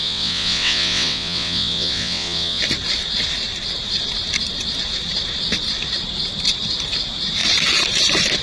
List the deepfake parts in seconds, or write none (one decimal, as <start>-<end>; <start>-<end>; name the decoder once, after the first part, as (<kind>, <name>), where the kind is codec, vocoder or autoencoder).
0.0-2.6 (vocoder, WaveNeXt)